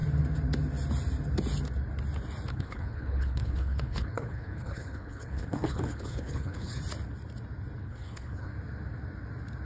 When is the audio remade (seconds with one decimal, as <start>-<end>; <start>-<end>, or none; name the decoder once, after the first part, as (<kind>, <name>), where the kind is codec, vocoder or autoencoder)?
2.5-6.8 (codec, HILCodec); 7.8-8.5